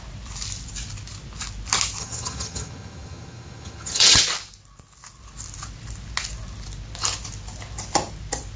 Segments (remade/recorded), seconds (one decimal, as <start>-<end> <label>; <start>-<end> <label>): 0.0-2.0 recorded; 2.0-4.2 remade; 4.2-8.6 recorded